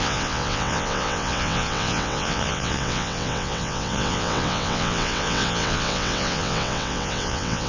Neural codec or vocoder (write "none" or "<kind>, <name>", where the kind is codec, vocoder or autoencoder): vocoder, WaveNeXt